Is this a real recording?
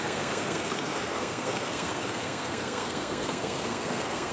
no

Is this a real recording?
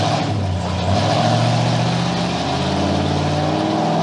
yes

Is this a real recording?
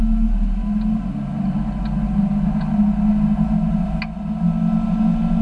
yes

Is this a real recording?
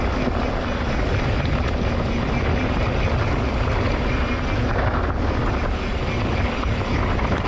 yes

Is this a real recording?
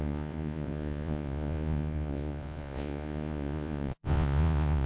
no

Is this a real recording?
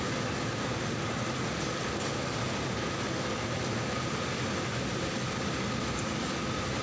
yes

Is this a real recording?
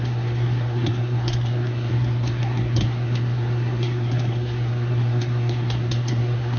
no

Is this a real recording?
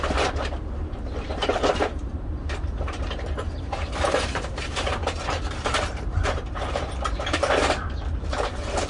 no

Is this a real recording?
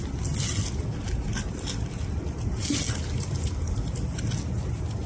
yes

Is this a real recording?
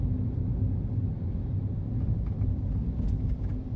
yes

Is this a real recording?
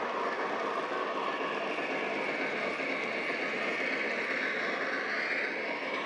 yes